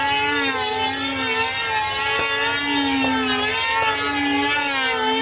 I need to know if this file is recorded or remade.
recorded